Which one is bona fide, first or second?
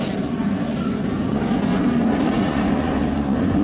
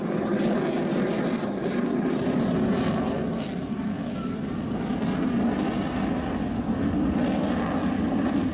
second